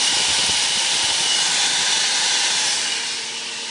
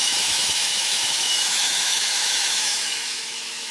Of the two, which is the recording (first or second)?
first